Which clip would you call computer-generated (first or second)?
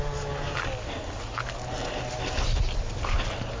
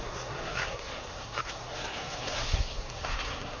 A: second